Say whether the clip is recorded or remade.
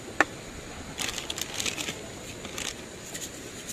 recorded